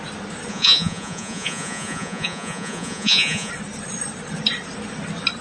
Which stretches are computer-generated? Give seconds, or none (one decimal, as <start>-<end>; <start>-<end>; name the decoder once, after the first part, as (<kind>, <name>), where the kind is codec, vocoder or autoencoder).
0.5-3.5 (vocoder, Vocos)